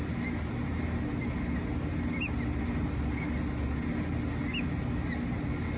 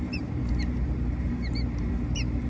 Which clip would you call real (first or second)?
first